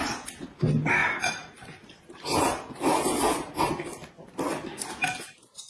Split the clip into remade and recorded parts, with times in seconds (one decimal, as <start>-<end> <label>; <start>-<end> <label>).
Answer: 0.0-5.7 recorded